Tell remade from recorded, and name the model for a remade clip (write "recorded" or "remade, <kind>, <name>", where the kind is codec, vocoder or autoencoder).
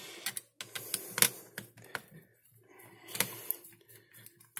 recorded